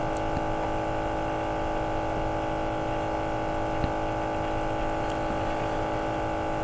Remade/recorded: recorded